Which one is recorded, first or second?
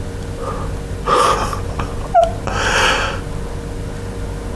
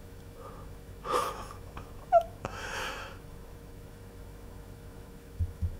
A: first